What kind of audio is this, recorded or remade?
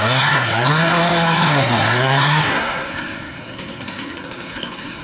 remade